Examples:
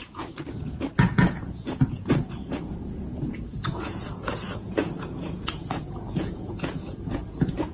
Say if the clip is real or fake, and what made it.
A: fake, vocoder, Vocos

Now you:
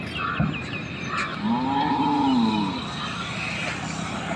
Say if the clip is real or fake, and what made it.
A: real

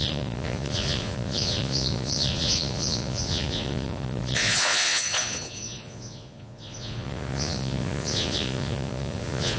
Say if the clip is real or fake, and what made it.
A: fake, vocoder, Vocos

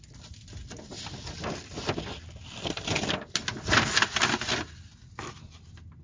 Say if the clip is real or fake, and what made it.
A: real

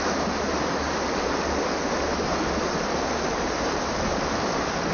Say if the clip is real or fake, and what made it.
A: real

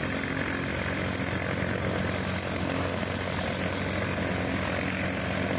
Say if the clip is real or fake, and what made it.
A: real